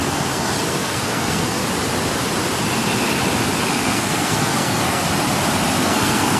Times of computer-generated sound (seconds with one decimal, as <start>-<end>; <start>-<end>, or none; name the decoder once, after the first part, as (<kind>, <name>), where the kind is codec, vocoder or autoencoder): 0.0-1.6 (codec, SNAC); 3.7-5.0; 5.8-6.4